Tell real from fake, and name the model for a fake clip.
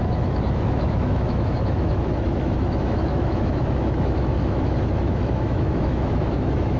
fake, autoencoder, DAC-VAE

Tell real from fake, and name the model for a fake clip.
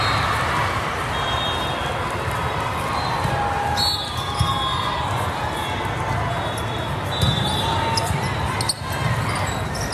real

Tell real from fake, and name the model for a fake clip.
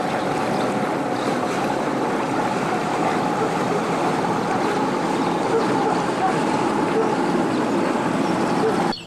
real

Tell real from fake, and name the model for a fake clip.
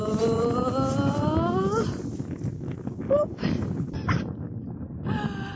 real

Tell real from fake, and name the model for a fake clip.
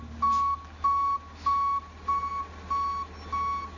real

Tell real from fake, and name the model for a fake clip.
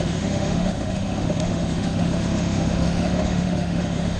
fake, autoencoder, DAC-VAE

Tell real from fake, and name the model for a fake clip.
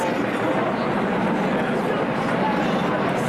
real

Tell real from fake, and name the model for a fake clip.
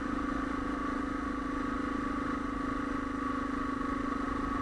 real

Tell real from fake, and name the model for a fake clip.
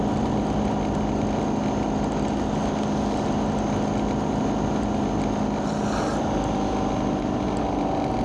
real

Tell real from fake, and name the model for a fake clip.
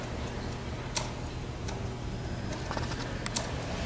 real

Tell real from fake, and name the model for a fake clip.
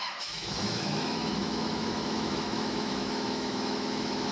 fake, autoencoder, DAC-VAE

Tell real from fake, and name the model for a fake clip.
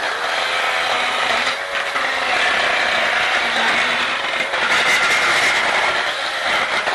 real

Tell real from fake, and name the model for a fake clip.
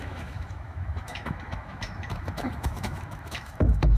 fake, autoencoder, DAC-VAE